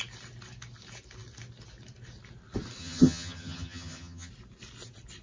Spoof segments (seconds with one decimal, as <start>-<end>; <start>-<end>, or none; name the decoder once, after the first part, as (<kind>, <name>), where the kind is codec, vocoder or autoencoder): 2.8-4.3 (vocoder, HiFi-GAN)